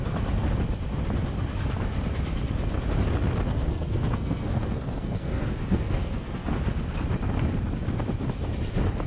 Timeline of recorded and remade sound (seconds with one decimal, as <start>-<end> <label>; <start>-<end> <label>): 0.0-3.5 recorded; 3.5-6.5 remade; 6.5-9.1 recorded